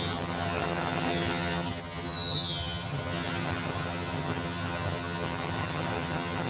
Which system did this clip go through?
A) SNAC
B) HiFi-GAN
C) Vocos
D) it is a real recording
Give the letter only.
B